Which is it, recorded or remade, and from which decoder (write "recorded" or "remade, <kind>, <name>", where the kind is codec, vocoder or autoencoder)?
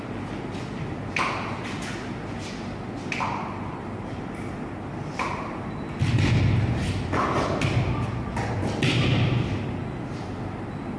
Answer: recorded